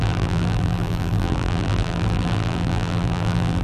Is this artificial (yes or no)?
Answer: yes